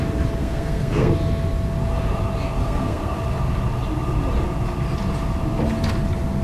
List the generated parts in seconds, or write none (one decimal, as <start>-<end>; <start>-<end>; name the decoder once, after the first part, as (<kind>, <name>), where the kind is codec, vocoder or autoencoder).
0.4-1.1 (codec, SNAC); 2.6-3.2